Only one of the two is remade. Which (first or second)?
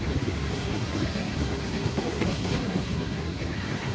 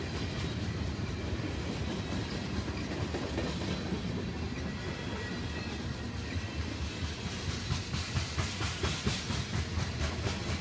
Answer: first